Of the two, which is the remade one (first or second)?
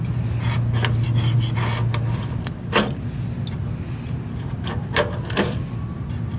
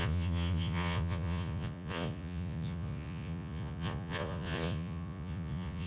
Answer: second